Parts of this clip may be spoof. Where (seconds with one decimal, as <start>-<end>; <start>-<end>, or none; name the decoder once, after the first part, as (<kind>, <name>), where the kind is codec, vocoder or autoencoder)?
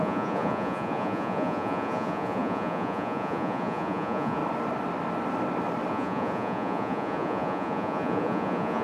0.0-4.4 (vocoder, Vocos); 5.9-8.8